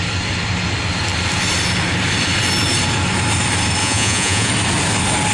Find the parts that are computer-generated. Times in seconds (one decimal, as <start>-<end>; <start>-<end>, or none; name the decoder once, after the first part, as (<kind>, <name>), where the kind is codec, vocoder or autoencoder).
3.8-4.5 (vocoder, Vocos)